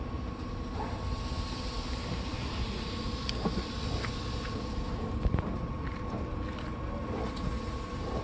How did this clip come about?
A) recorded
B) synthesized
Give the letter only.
A